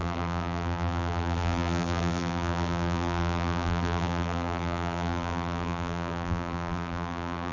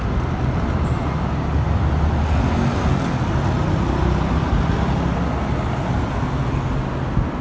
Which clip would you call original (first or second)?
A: second